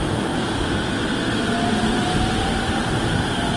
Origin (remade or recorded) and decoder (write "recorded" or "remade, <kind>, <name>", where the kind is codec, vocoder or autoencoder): recorded